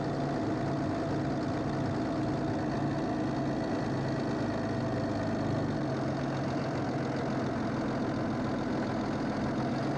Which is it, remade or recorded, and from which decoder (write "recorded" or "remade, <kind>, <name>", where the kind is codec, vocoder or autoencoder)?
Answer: recorded